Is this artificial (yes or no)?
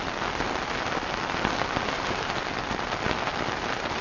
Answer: no